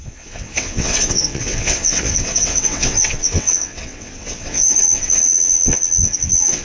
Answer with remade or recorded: remade